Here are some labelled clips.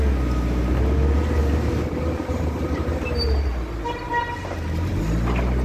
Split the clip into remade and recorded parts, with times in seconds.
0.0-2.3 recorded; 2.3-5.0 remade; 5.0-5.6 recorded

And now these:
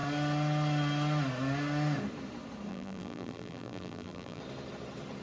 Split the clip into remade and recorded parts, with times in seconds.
0.0-2.7 recorded; 2.7-4.4 remade; 4.4-5.2 recorded

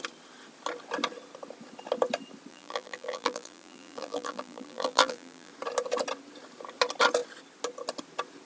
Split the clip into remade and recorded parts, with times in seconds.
0.0-2.5 recorded; 2.5-5.5 remade; 5.5-8.5 recorded

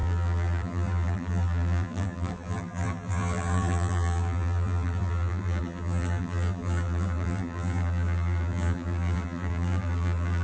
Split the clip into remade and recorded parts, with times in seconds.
0.0-10.4 remade

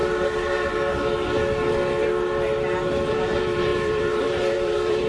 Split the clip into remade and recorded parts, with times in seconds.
0.0-3.1 recorded; 3.1-5.1 remade

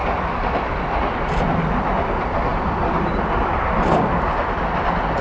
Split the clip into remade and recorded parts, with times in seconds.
0.0-1.4 recorded; 1.4-5.2 remade